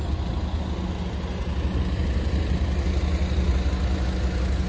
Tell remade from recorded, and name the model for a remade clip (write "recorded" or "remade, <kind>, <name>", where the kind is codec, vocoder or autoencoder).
recorded